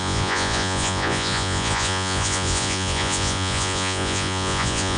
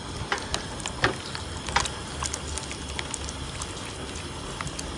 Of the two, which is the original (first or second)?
second